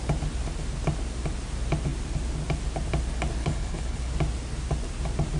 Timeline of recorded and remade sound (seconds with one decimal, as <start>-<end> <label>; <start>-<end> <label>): 0.0-3.4 recorded; 3.4-4.1 remade; 4.1-5.4 recorded